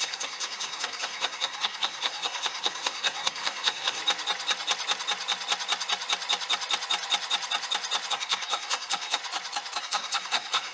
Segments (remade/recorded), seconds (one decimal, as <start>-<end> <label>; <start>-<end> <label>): 0.0-4.0 remade; 4.0-8.1 recorded; 8.1-9.2 remade; 9.2-9.8 recorded; 9.8-10.7 remade